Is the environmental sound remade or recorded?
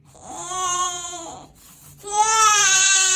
remade